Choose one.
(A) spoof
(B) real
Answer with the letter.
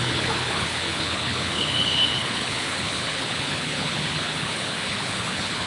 A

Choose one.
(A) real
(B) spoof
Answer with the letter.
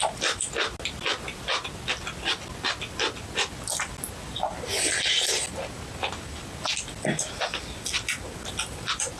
A